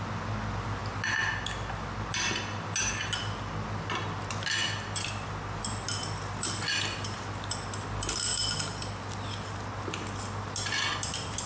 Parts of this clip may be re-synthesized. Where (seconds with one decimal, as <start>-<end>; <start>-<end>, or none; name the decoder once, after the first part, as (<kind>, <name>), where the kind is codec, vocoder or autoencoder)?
none